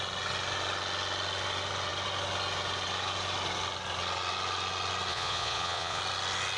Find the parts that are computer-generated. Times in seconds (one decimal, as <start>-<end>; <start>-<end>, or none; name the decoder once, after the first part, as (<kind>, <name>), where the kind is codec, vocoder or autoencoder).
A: 5.1-6.0 (vocoder, Vocos)